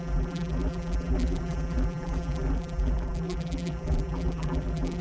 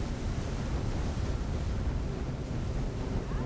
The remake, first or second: first